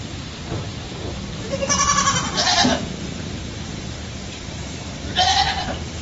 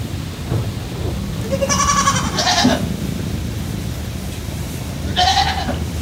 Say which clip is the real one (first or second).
second